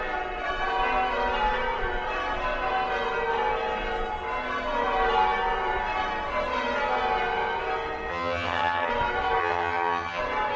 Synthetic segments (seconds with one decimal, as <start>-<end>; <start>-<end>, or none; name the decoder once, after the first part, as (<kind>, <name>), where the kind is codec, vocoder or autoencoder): 8.1-8.9 (vocoder, HiFi-GAN); 9.4-10.2